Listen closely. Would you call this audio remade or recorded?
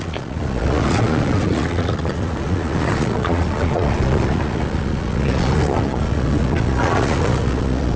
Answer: remade